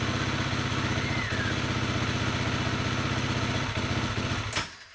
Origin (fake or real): real